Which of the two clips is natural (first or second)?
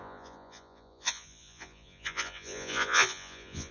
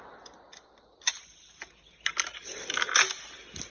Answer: second